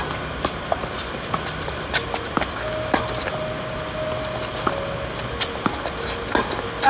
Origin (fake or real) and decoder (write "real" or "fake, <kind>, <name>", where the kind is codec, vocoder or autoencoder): real